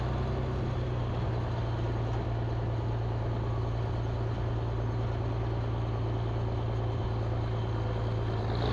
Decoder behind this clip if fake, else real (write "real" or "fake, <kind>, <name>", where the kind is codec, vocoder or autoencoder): real